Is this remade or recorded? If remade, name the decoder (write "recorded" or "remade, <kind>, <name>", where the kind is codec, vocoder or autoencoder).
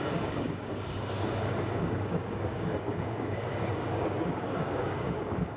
remade, codec, DAC